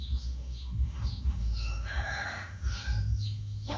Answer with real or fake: fake